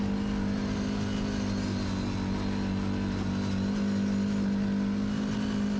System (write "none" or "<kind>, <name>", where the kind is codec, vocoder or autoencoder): none